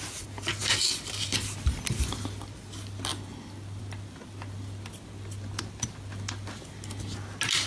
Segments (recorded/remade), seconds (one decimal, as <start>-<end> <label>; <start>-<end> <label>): 0.0-7.7 recorded